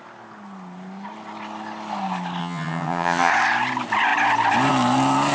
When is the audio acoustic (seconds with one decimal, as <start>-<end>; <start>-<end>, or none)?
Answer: 0.0-2.4; 3.3-5.3